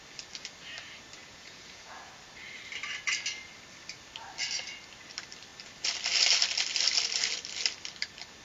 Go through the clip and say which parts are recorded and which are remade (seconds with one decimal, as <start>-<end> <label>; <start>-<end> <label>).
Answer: 0.0-1.2 recorded; 1.2-2.1 remade; 2.1-8.4 recorded